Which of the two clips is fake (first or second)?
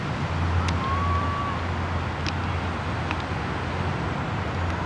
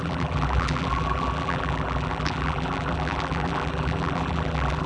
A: second